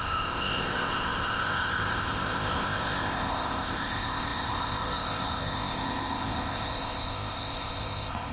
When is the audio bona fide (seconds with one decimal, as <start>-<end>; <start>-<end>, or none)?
none